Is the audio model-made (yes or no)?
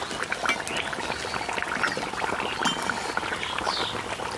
no